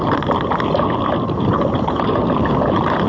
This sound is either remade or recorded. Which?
recorded